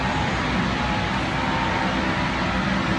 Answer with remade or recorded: recorded